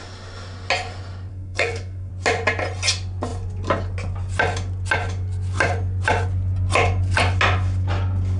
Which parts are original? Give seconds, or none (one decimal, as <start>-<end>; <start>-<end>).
0.0-1.3; 2.1-8.4